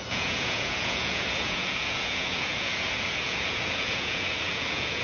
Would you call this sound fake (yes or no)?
yes